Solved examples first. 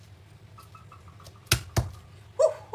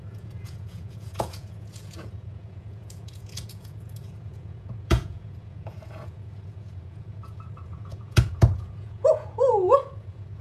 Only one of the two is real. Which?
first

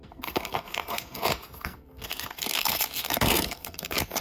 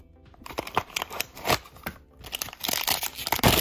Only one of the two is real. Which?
second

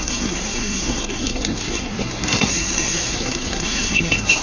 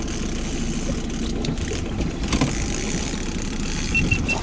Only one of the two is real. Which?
second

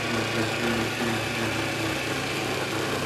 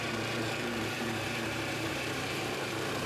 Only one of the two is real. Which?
first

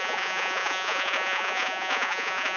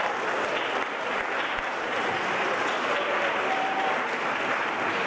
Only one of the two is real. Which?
second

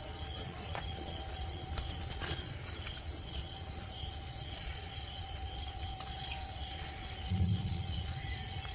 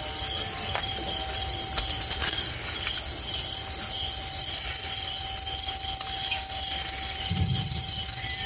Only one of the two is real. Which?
second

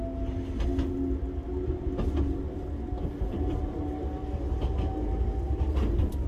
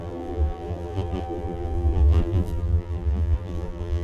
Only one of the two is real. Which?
first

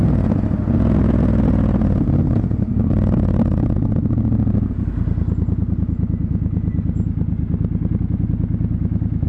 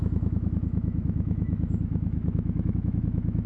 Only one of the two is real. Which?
first